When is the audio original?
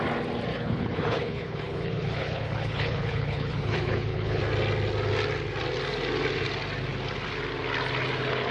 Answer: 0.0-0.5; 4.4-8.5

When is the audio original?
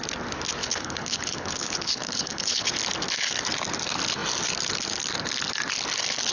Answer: 0.0-0.6; 2.7-6.3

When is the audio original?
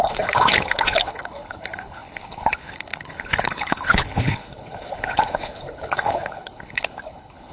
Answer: none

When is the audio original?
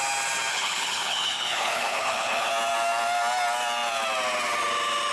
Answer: 0.0-0.5; 2.5-5.1